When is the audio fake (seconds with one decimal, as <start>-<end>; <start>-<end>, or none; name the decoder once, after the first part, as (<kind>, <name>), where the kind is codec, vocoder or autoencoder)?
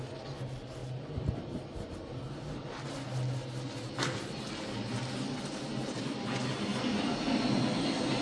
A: none